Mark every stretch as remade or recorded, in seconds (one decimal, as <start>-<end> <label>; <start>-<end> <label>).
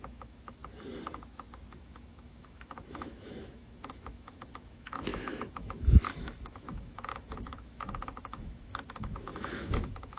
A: 0.0-0.6 remade; 0.6-1.7 recorded; 1.7-10.2 remade